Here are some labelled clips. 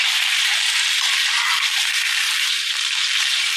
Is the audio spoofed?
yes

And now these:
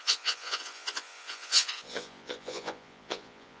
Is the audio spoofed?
yes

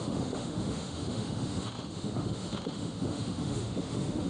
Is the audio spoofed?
yes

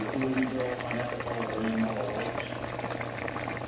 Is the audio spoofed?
no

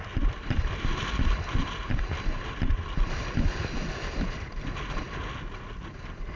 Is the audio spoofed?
no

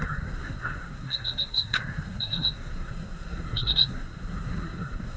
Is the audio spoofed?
yes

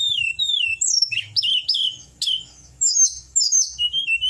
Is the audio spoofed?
yes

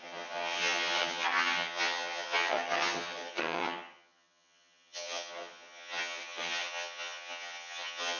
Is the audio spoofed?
yes